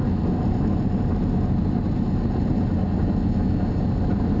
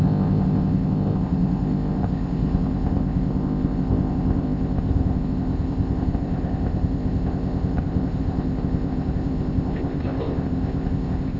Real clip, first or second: first